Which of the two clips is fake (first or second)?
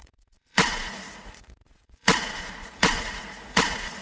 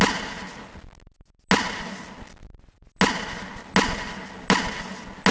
first